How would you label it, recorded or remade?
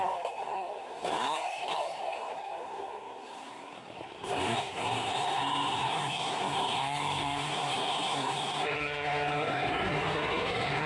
remade